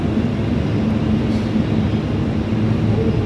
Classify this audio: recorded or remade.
recorded